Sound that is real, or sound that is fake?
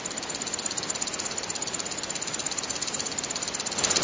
real